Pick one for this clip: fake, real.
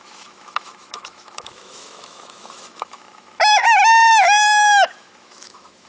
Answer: fake